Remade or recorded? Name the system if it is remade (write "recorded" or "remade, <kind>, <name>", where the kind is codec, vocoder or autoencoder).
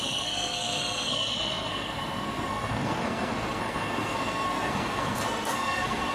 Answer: remade, codec, SNAC